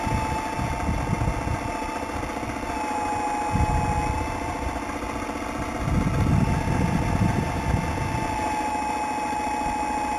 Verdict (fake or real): real